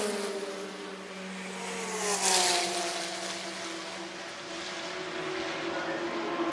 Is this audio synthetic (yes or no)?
no